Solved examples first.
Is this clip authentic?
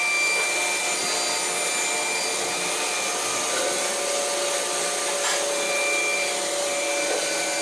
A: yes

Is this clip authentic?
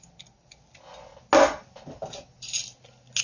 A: yes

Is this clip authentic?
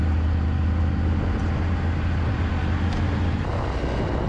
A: yes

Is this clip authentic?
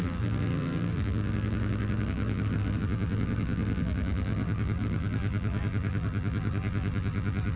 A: no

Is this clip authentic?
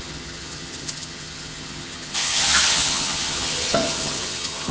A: no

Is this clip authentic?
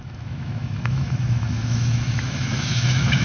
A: no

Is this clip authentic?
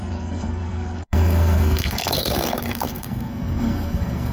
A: no